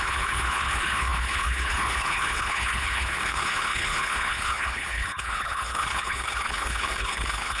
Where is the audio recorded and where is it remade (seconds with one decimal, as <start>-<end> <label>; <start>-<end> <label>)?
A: 0.0-7.6 remade